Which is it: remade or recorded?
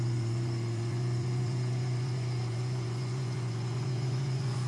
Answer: remade